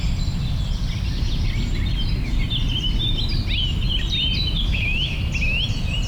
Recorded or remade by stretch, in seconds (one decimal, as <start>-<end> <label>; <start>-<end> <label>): 0.0-4.7 recorded; 4.7-5.2 remade; 5.2-6.1 recorded

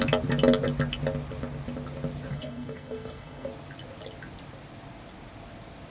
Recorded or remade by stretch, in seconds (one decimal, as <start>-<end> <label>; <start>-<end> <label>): 0.0-2.3 recorded; 2.3-3.5 remade; 3.5-5.9 recorded

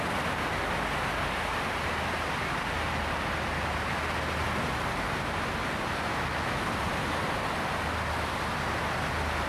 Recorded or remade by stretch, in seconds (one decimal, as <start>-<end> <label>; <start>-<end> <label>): 0.0-6.1 recorded; 6.1-6.6 remade; 6.6-9.5 recorded

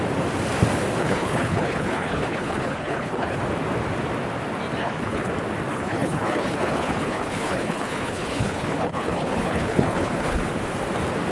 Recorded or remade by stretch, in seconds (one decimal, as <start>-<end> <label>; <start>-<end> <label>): 0.0-1.0 recorded; 1.0-3.4 remade; 3.4-4.8 recorded; 4.8-5.3 remade; 5.3-5.7 recorded; 5.7-10.4 remade; 10.4-11.3 recorded